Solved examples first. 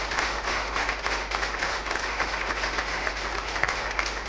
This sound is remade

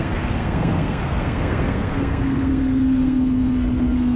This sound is remade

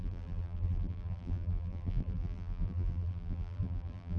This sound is remade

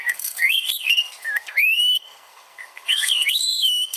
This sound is remade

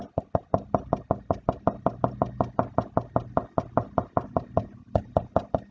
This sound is recorded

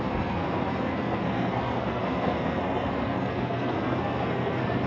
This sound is remade